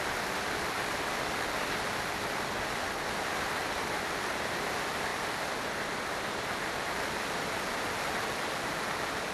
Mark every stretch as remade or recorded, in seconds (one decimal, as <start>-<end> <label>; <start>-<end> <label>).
0.0-9.3 recorded